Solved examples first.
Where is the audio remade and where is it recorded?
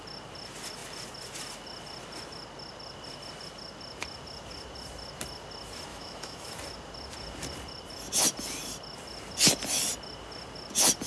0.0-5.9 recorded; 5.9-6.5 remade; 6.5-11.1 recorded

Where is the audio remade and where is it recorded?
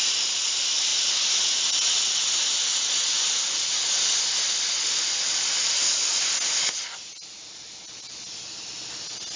0.0-9.4 recorded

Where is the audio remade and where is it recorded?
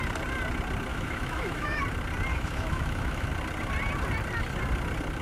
0.0-0.9 recorded; 0.9-1.8 remade; 1.8-2.3 recorded; 2.3-3.3 remade; 3.3-5.2 recorded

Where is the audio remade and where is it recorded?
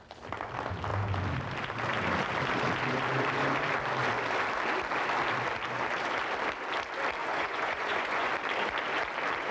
0.0-7.2 recorded; 7.2-8.3 remade; 8.3-9.5 recorded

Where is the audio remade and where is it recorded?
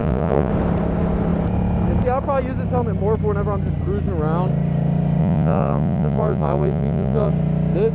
0.0-0.5 remade; 0.5-5.2 recorded; 5.2-7.3 remade; 7.3-7.9 recorded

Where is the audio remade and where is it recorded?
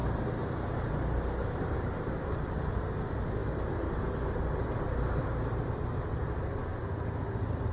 0.0-2.1 remade; 2.1-7.7 recorded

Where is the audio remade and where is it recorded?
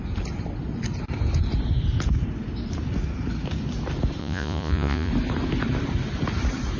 0.0-4.2 recorded; 4.2-5.1 remade; 5.1-6.8 recorded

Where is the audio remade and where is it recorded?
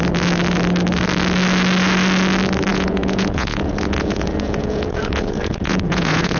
0.0-2.7 recorded; 2.7-6.4 remade